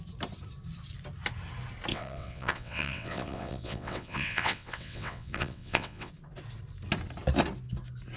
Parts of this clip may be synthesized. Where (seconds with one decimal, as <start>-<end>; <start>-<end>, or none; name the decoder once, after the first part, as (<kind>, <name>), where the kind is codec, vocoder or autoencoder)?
1.9-6.1 (vocoder, WaveNeXt)